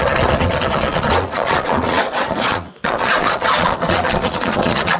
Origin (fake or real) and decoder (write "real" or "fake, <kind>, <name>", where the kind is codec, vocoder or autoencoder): fake, vocoder, Vocos